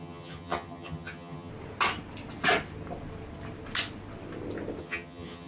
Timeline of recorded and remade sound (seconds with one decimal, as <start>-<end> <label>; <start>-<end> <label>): 0.0-1.5 remade; 1.5-4.8 recorded; 4.8-5.5 remade